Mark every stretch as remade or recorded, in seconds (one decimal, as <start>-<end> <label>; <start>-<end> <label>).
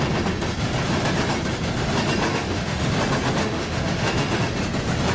0.0-2.3 recorded; 2.3-2.9 remade; 2.9-3.4 recorded; 3.4-4.4 remade; 4.4-5.1 recorded